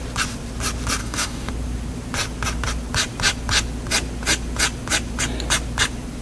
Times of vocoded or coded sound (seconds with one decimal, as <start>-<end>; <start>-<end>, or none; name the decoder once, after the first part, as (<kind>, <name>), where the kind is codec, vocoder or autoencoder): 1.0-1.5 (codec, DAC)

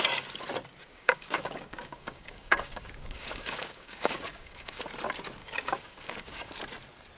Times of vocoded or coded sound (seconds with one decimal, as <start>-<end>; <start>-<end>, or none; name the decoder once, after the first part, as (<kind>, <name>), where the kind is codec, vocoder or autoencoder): 0.9-4.8 (codec, DAC); 5.4-6.5

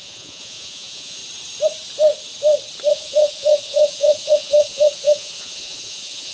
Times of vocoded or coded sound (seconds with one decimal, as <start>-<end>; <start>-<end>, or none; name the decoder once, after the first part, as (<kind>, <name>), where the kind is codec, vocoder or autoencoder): 0.0-1.2 (vocoder, Vocos); 2.9-6.3